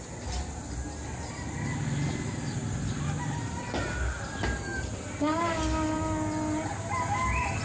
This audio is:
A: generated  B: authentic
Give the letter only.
B